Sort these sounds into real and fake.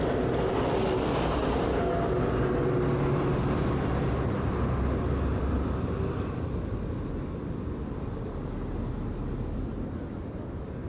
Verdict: real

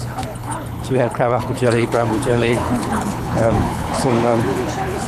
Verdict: fake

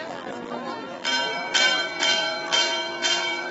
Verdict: fake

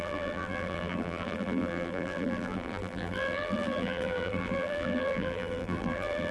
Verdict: fake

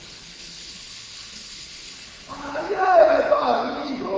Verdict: fake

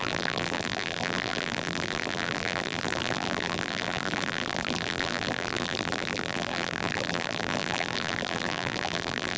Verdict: fake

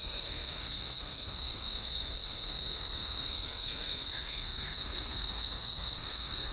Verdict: fake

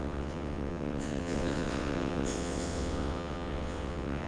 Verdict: fake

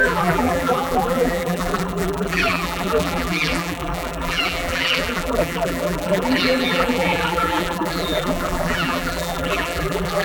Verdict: fake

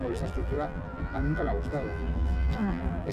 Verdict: fake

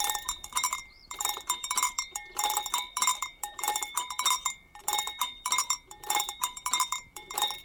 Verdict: fake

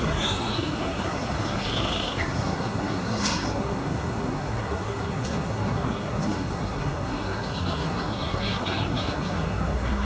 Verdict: fake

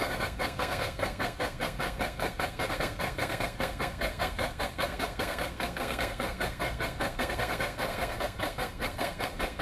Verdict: fake